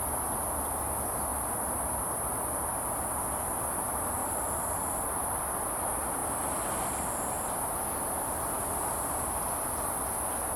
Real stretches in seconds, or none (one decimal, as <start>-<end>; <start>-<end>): 0.0-4.2; 5.4-10.6